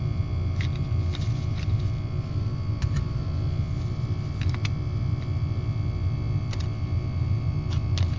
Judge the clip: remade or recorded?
recorded